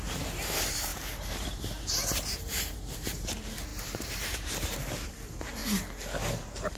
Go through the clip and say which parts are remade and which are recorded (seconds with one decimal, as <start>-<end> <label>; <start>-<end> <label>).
0.0-5.6 remade; 5.6-6.3 recorded; 6.3-6.8 remade